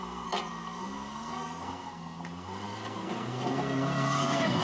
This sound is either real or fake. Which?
fake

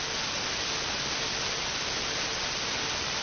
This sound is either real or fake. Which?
real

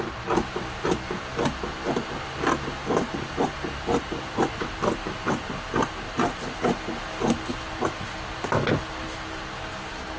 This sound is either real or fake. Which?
real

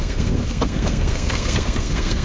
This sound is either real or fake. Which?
fake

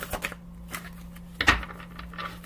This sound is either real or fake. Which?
real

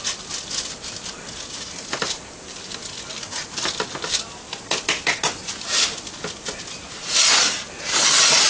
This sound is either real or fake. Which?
real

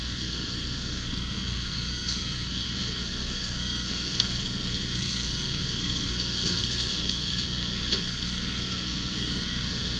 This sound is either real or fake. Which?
fake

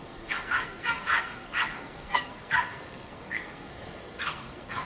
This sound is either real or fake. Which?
fake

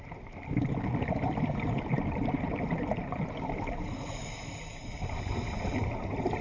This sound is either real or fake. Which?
real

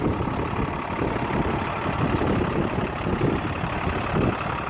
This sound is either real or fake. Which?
real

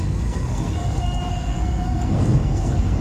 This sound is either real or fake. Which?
fake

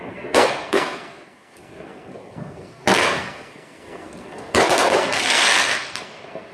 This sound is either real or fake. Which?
fake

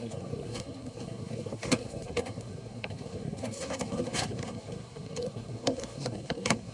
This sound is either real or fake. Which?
fake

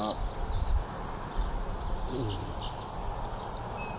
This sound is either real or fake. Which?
real